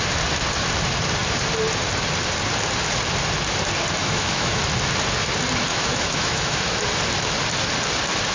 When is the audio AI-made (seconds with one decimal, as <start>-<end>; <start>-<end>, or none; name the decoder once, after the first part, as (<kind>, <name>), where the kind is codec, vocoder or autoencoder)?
4.0-4.6 (autoencoder, DAC-VAE); 5.7-6.6